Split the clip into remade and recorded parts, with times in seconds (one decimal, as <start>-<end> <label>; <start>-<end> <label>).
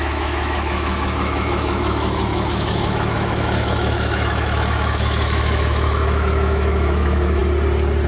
0.0-7.4 remade; 7.4-8.1 recorded